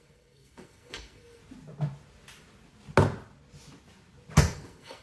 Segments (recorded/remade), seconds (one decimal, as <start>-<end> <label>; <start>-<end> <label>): 0.0-1.4 remade; 1.4-4.4 recorded; 4.4-5.0 remade